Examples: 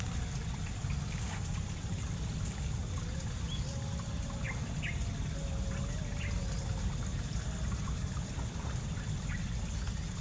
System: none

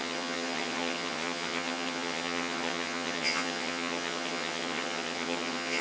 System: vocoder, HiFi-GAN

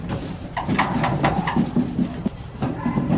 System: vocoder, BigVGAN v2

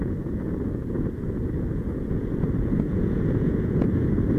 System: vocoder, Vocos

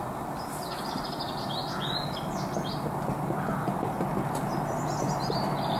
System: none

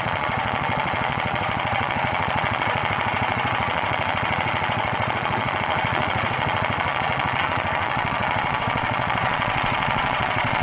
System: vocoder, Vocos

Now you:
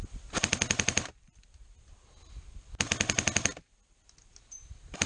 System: none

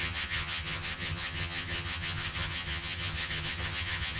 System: vocoder, HiFi-GAN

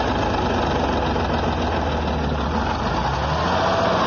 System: none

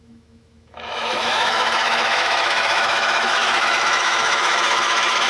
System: autoencoder, DAC-VAE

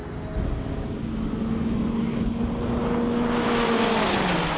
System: none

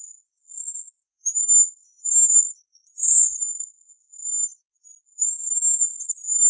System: autoencoder, DAC-VAE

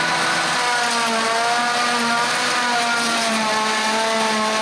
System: none